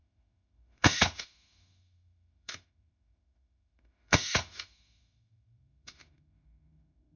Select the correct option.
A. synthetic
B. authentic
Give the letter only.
A